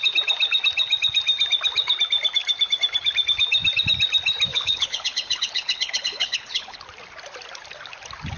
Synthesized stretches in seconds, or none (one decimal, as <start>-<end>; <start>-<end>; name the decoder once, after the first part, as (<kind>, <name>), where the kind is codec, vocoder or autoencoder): 4.5-6.8 (codec, HILCodec)